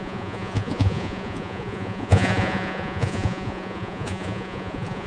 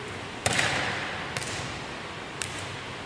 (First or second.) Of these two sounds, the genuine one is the second